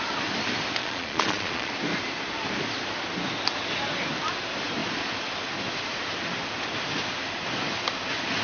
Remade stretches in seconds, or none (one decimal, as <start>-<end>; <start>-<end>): 0.8-1.7